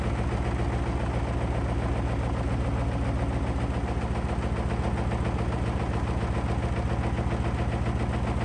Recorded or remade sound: recorded